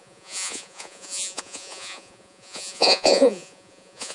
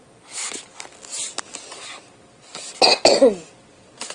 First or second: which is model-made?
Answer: first